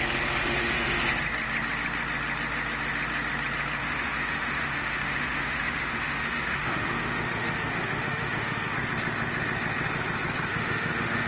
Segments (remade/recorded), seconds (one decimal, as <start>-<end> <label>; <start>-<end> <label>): 0.0-0.4 recorded; 0.4-1.0 remade; 1.0-3.8 recorded; 3.8-8.7 remade; 8.7-10.5 recorded; 10.5-11.3 remade